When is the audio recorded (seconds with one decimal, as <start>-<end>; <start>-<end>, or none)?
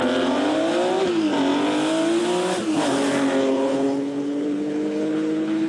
0.0-3.4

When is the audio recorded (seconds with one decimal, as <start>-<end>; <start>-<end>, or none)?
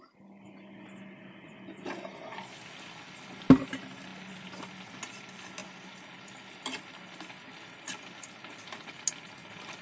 0.0-9.8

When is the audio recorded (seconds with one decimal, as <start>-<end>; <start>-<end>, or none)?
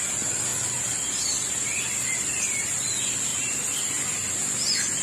0.0-5.0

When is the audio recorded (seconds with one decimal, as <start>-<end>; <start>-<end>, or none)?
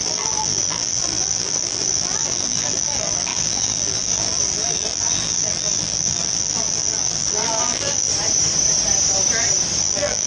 8.1-9.8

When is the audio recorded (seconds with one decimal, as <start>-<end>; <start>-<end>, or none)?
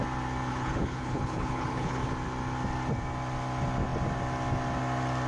0.0-0.5; 2.1-5.3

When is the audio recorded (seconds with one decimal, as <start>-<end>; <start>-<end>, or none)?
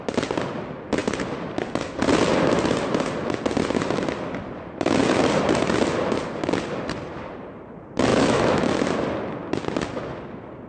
0.0-8.1; 8.8-10.7